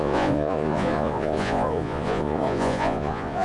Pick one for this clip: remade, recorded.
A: remade